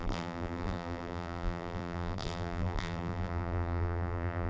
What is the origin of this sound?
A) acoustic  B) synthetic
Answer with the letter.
B